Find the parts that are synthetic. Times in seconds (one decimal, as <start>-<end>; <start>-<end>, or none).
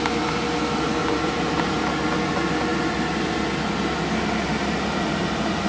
1.0-1.8